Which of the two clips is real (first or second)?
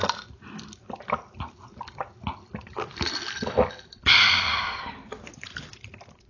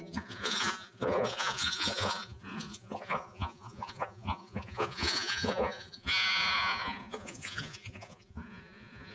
first